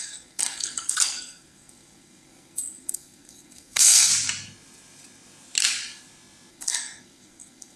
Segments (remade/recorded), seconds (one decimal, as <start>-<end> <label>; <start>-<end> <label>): 0.0-4.1 remade; 4.1-6.5 recorded; 6.5-7.8 remade